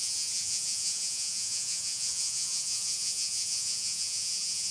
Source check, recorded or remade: remade